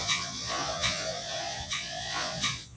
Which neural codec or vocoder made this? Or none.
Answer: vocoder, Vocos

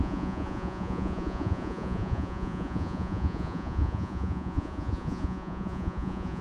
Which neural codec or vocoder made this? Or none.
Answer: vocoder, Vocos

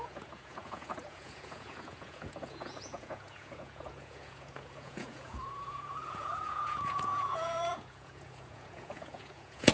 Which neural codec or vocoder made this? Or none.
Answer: vocoder, Vocos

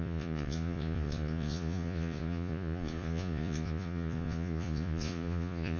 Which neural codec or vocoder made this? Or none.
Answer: vocoder, Vocos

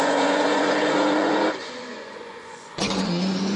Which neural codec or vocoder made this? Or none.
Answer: vocoder, Vocos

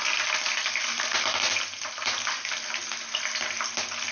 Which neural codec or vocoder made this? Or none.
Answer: none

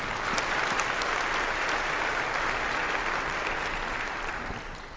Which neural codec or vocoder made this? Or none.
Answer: none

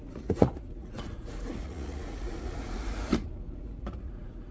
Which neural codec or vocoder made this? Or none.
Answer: vocoder, Vocos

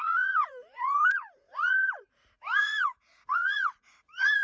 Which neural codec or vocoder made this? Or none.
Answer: vocoder, Vocos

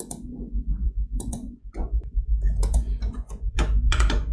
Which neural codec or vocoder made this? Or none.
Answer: vocoder, Vocos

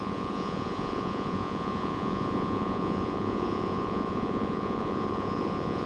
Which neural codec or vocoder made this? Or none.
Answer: vocoder, Vocos